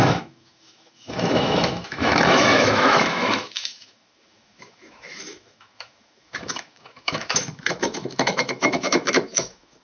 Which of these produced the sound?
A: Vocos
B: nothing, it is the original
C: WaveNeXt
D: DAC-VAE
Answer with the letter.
D